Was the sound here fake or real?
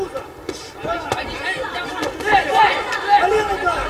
real